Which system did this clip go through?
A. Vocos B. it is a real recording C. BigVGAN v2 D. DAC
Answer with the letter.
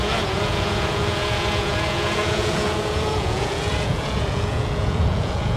A